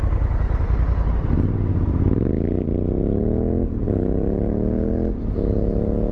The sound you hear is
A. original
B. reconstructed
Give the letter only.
A